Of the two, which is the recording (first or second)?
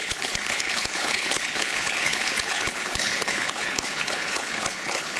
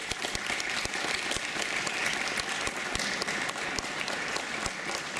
second